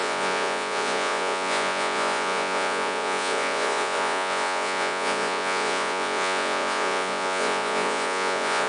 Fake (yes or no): yes